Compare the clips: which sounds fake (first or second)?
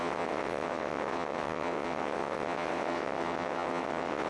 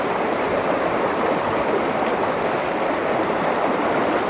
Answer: first